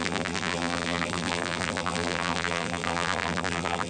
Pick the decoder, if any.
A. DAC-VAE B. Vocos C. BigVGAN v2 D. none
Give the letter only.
C